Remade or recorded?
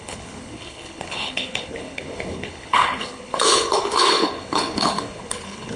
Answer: remade